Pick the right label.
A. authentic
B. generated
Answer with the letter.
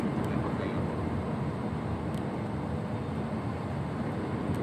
A